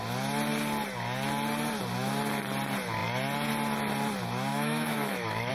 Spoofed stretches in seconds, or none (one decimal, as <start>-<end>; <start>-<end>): 4.5-5.5